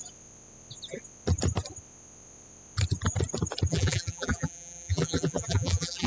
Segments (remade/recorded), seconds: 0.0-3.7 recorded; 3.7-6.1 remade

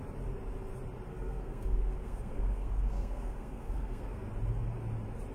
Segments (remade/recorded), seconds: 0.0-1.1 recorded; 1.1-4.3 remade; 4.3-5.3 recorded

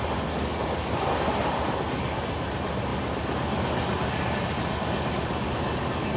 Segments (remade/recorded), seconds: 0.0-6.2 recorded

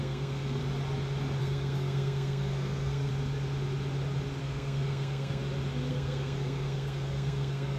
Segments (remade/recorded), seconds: 0.0-0.6 remade; 0.6-1.4 recorded; 1.4-3.1 remade; 3.1-4.4 recorded; 4.4-5.4 remade; 5.4-5.9 recorded; 5.9-7.8 remade

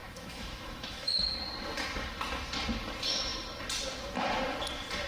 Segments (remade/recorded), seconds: 0.0-1.3 remade; 1.3-5.1 recorded

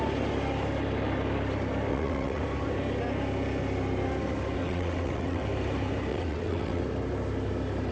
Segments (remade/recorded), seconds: 0.0-1.9 recorded; 1.9-2.4 remade; 2.4-4.6 recorded; 4.6-5.4 remade; 5.4-6.1 recorded; 6.1-6.8 remade; 6.8-7.9 recorded

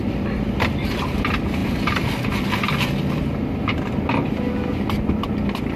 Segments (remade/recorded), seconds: 0.0-5.8 recorded

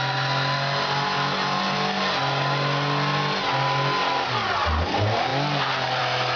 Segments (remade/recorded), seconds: 0.0-6.4 recorded